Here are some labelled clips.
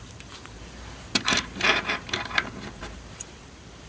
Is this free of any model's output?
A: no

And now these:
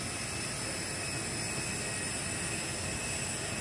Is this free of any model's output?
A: yes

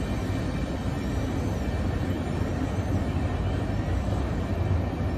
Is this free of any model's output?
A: yes